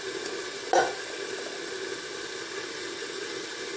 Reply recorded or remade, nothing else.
recorded